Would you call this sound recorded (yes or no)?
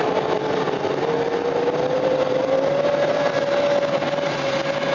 yes